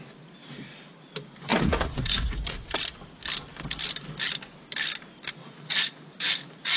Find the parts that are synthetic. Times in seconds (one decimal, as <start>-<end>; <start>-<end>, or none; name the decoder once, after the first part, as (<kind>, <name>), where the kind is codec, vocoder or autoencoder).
1.5-2.8 (vocoder, Vocos); 5.4-6.3